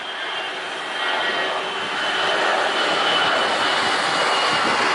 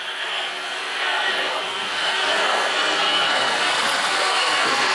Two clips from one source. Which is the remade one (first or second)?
second